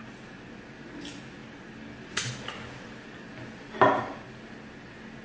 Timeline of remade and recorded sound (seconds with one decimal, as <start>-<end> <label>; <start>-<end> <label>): 0.0-5.2 recorded

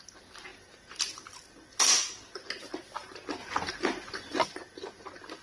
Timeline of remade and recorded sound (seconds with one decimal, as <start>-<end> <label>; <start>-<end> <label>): 0.0-5.4 recorded

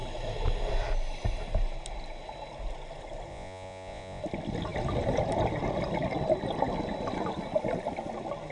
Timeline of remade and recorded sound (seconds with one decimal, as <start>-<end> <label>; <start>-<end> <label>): 0.0-3.3 recorded; 3.3-4.2 remade; 4.2-8.5 recorded

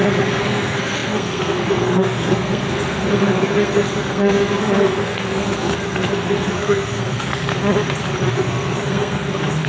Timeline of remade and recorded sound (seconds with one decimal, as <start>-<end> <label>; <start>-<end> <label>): 0.0-7.5 remade; 7.5-8.3 recorded; 8.3-9.7 remade

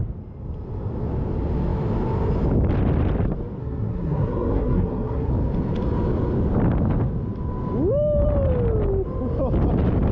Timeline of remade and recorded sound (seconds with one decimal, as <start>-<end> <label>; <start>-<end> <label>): 0.0-3.6 recorded; 3.6-5.3 remade; 5.3-10.1 recorded

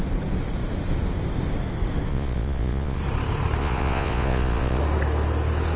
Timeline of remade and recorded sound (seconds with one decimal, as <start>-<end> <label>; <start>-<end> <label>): 0.0-2.1 recorded; 2.1-3.0 remade; 3.0-3.6 recorded; 3.6-4.8 remade; 4.8-5.8 recorded